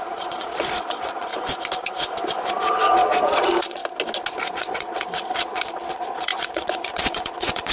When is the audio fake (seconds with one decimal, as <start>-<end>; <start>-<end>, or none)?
0.0-1.3; 2.5-3.8; 4.5-7.7